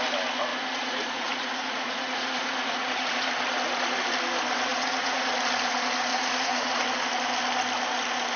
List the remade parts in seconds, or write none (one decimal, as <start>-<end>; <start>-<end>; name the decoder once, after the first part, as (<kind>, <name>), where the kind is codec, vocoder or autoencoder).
0.5-3.3 (vocoder, Vocos); 4.7-5.3; 6.1-6.8